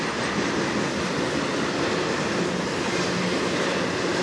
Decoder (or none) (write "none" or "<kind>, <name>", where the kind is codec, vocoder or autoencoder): none